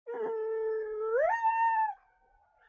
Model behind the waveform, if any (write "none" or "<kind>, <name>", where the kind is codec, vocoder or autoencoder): none